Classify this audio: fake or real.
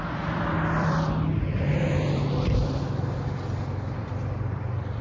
fake